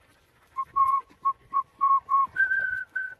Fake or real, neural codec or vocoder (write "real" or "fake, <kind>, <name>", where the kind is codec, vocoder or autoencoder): fake, vocoder, Vocos